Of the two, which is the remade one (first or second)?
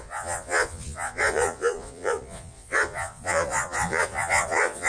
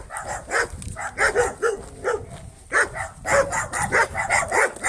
first